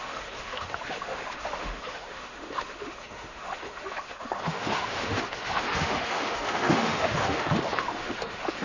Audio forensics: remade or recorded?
remade